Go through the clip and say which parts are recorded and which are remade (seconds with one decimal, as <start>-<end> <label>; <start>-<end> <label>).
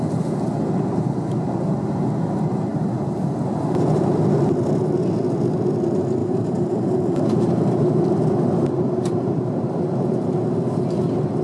0.0-2.7 recorded; 2.7-3.2 remade; 3.2-6.2 recorded; 6.2-10.3 remade; 10.3-11.4 recorded